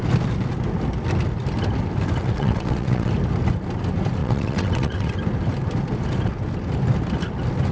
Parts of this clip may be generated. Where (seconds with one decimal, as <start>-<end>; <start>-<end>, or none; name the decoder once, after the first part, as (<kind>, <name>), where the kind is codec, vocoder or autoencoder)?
2.2-3.1 (vocoder, WaveNeXt); 4.2-5.1